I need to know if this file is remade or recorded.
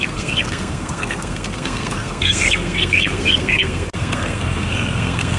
remade